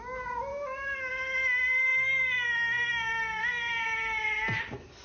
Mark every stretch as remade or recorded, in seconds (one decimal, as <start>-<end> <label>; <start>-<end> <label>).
0.0-0.5 recorded; 0.5-1.1 remade; 1.1-5.0 recorded